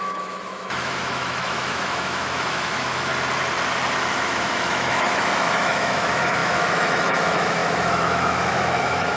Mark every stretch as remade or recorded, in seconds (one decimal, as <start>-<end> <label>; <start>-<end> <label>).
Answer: 0.0-3.1 remade; 3.1-4.1 recorded; 4.1-9.2 remade